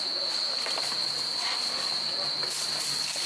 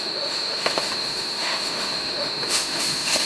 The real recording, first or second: first